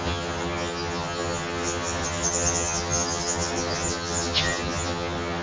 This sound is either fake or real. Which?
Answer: fake